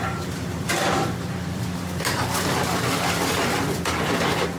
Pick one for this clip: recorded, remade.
remade